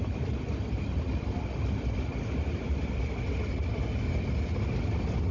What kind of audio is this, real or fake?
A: real